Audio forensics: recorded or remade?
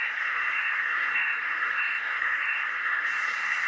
remade